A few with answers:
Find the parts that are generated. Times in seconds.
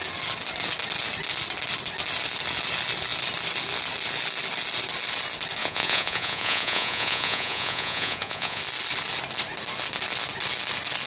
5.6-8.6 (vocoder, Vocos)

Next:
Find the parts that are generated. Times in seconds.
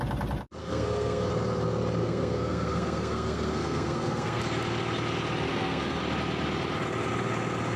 0.6-1.3 (codec, SNAC); 2.0-4.4; 5.5-6.0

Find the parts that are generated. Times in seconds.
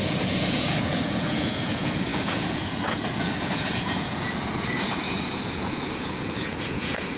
0.0-7.2 (vocoder, Vocos)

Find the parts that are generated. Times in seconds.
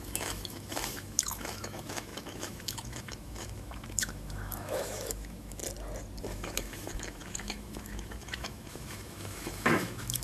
0.0-5.6 (autoencoder, DAC-VAE); 6.2-10.2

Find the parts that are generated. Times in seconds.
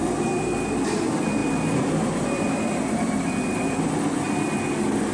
none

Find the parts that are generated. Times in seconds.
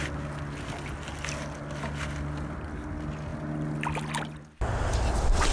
none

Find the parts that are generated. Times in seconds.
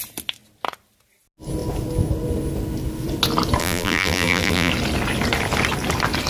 3.6-4.7 (vocoder, BigVGAN v2)